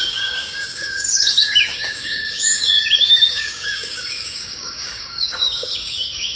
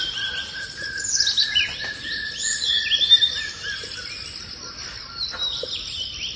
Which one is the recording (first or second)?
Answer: second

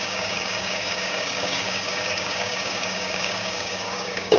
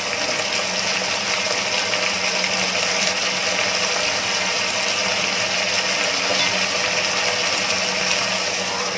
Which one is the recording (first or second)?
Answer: second